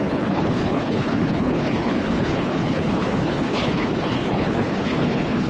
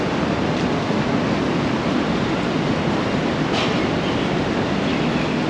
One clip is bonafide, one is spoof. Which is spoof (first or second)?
first